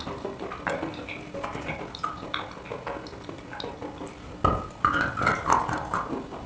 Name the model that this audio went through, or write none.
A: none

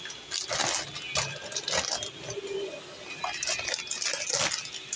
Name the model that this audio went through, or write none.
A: none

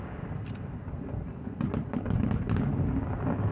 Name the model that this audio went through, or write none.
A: none